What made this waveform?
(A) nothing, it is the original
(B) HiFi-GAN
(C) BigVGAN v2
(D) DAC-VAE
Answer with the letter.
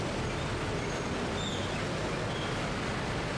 A